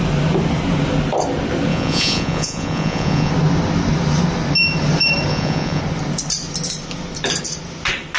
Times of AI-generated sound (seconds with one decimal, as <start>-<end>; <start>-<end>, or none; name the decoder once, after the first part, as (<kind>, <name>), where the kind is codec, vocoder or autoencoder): 1.7-3.3 (vocoder, Vocos); 5.3-5.8